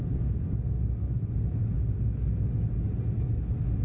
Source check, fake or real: real